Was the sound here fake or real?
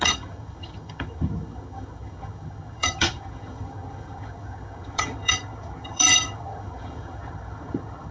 fake